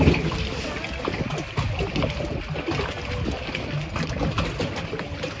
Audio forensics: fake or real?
real